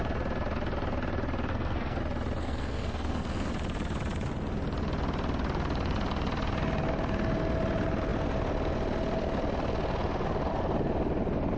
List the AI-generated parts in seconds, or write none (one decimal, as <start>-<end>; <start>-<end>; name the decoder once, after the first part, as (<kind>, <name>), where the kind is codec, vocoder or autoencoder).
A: 1.5-2.0 (codec, SNAC); 2.4-3.5